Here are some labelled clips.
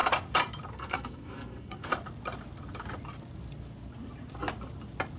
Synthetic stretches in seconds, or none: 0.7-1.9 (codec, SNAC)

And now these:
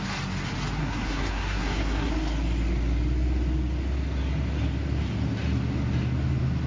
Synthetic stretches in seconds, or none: 0.8-2.1 (codec, SNAC)